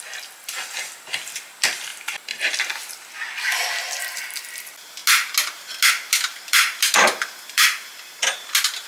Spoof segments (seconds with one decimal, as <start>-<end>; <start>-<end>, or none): 0.0-5.0; 5.9-8.9